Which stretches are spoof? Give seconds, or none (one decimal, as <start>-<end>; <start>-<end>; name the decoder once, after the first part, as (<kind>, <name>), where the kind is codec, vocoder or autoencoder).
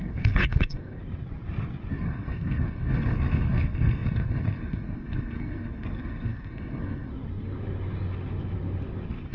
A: 0.0-1.0 (codec, SNAC); 1.9-7.1